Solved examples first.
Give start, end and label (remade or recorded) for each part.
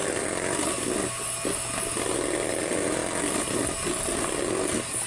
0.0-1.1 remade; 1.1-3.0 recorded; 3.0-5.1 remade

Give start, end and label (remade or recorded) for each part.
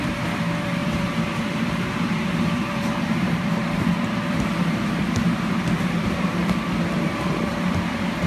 0.0-6.4 remade; 6.4-7.3 recorded; 7.3-8.3 remade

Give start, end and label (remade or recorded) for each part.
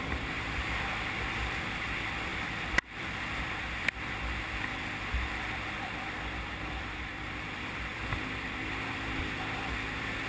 0.0-10.3 remade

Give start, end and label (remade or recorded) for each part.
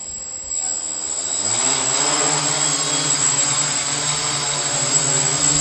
0.0-0.5 remade; 0.5-3.3 recorded; 3.3-5.0 remade; 5.0-5.6 recorded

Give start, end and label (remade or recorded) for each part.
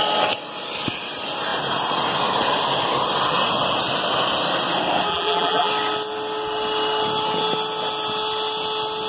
0.0-5.1 recorded; 5.1-5.7 remade; 5.7-9.1 recorded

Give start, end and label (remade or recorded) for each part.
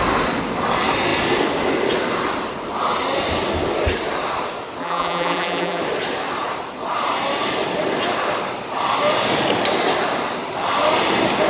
0.0-4.8 recorded; 4.8-5.8 remade; 5.8-11.5 recorded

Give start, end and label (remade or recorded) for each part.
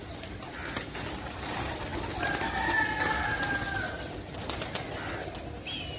0.0-6.0 recorded